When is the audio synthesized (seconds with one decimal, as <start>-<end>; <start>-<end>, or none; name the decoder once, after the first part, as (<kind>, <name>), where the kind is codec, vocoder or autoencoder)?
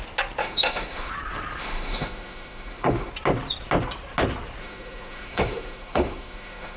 0.4-1.1 (autoencoder, DAC-VAE); 1.6-3.1; 4.6-6.8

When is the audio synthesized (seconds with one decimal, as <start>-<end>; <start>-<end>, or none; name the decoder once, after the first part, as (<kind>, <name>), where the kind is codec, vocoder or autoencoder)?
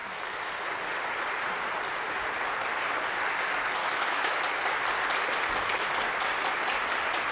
3.8-4.4 (autoencoder, DAC-VAE)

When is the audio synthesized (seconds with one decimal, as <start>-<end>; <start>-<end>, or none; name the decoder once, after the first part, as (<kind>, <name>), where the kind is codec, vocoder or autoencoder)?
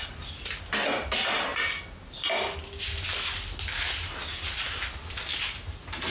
none